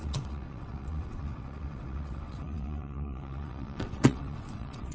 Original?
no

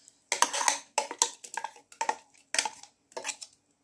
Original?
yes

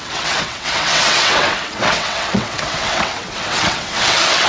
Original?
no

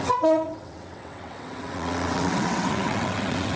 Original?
no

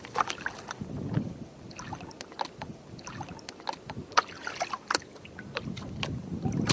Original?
yes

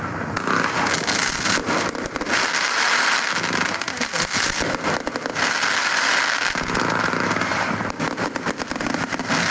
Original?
yes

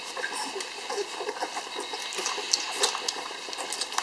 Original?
yes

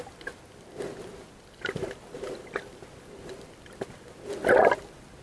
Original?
yes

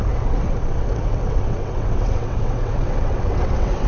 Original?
no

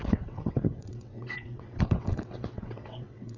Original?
no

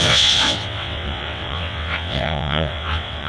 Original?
no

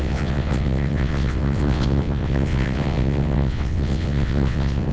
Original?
no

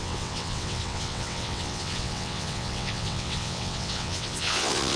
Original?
no